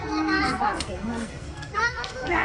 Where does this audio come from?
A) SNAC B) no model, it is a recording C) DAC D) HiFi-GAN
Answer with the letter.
A